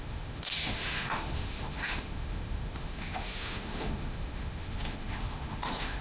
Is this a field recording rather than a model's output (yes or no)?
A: no